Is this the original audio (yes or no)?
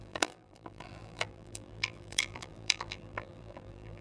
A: no